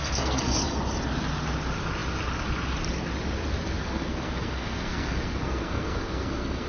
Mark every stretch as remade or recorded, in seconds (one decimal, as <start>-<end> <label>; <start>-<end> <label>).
0.0-0.6 remade; 0.6-3.8 recorded; 3.8-6.7 remade